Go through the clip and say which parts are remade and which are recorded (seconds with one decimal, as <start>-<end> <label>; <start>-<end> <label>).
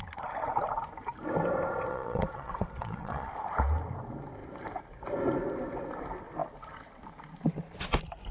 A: 0.0-1.9 recorded; 1.9-3.3 remade; 3.3-8.3 recorded